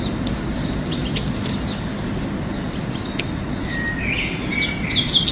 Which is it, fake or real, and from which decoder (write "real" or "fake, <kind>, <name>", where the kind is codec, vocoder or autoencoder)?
real